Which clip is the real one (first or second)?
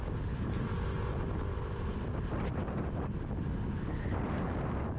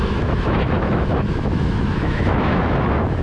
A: first